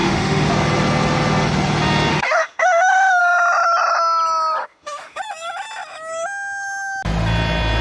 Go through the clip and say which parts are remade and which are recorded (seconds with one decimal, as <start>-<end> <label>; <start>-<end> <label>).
0.0-0.5 remade; 0.5-2.1 recorded; 2.1-3.2 remade; 3.2-4.6 recorded; 4.6-5.2 remade; 5.2-7.8 recorded